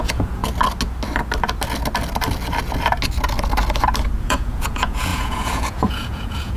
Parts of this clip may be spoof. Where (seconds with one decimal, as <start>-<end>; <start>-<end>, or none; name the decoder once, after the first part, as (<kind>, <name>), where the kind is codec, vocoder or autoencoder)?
0.0-0.4 (vocoder, Vocos); 4.2-6.6